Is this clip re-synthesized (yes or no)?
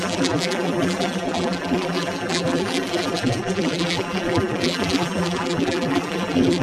yes